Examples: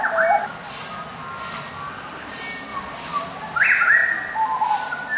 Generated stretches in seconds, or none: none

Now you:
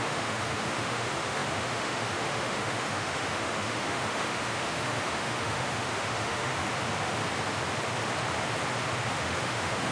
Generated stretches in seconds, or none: 0.0-6.6 (autoencoder, DAC-VAE); 9.1-9.9

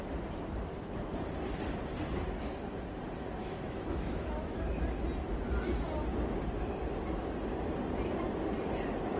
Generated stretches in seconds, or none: 3.4-4.8 (autoencoder, DAC-VAE)

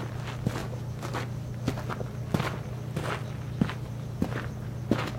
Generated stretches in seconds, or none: none